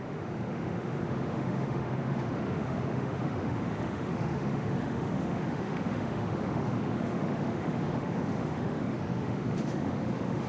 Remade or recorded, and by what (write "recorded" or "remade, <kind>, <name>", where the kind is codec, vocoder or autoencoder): remade, autoencoder, DAC-VAE